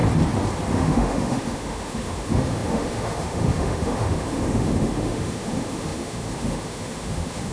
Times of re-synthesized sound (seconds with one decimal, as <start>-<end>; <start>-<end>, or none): 0.7-7.5